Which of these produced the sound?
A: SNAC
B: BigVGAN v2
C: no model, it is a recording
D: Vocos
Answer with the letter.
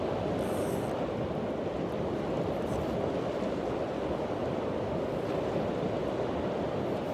C